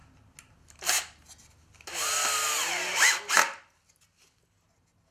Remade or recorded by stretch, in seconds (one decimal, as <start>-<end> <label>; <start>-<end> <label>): 0.0-5.1 recorded